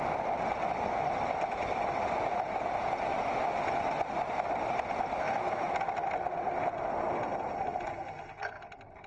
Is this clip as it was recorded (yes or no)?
yes